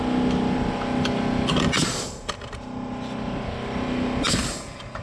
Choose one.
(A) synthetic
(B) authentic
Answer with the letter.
B